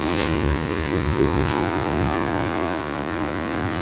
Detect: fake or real fake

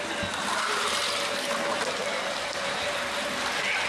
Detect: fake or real real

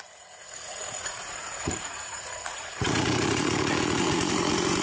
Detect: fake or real fake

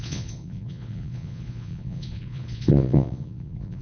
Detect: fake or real fake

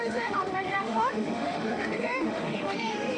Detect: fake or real fake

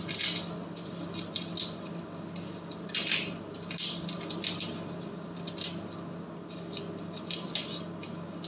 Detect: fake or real real